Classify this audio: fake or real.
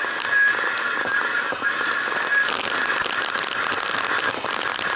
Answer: real